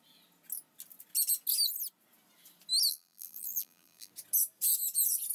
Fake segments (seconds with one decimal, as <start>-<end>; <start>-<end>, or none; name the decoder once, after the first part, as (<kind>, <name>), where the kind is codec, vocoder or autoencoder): 2.9-4.1 (vocoder, BigVGAN v2)